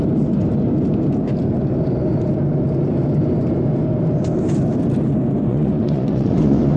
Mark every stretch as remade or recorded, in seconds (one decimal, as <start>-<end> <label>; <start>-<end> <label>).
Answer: 0.0-5.5 recorded; 5.5-6.8 remade